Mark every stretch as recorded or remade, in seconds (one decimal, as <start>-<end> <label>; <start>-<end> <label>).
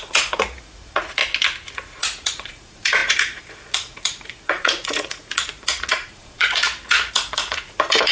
0.0-1.2 remade; 1.2-1.7 recorded; 1.7-8.1 remade